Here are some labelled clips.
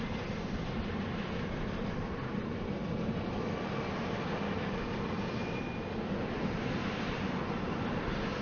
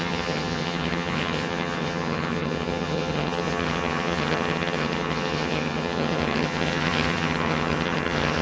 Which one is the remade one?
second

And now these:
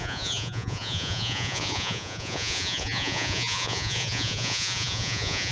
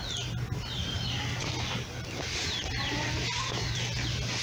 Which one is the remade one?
first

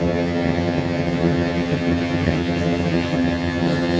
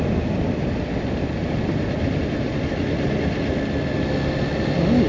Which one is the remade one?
first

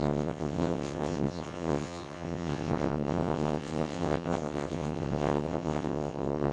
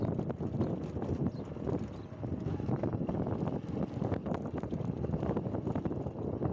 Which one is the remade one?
first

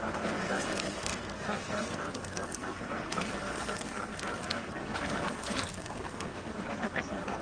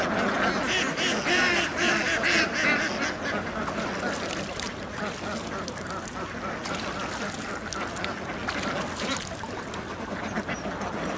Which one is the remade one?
first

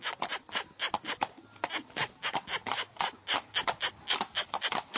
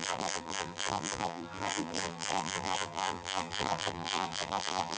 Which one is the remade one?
second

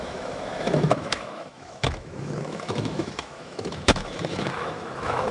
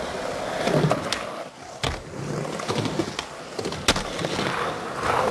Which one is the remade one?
first